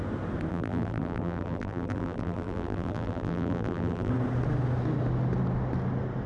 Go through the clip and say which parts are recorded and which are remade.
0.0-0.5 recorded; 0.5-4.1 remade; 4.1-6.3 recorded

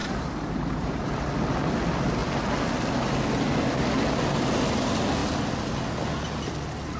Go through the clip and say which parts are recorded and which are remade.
0.0-1.1 remade; 1.1-7.0 recorded

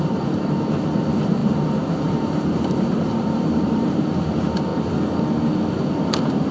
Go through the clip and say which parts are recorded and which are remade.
0.0-4.7 remade; 4.7-6.5 recorded

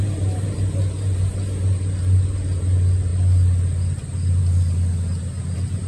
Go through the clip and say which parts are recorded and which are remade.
0.0-5.9 recorded

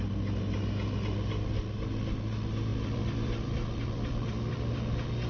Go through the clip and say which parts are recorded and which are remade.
0.0-2.7 recorded; 2.7-5.3 remade

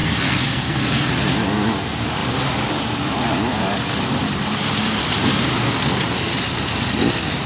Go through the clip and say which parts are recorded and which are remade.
0.0-1.1 remade; 1.1-7.5 recorded